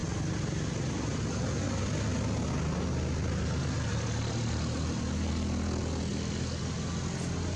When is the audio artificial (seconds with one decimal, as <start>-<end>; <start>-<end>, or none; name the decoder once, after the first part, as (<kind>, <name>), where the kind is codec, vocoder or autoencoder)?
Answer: none